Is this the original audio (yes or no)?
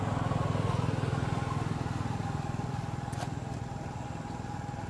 yes